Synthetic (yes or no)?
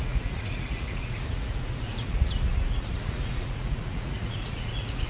yes